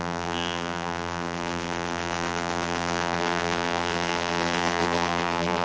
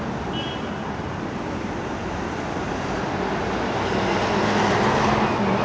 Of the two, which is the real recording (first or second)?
second